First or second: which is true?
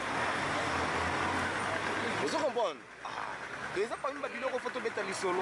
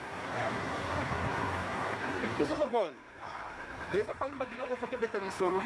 first